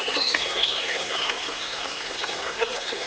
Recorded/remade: remade